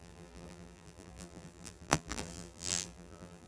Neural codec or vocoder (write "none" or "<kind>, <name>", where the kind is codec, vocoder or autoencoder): vocoder, BigVGAN v2